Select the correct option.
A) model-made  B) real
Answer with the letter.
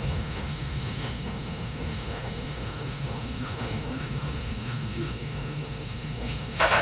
A